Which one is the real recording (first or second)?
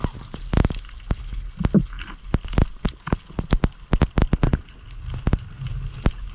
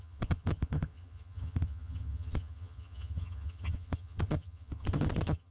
first